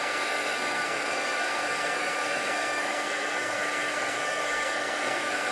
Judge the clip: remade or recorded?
remade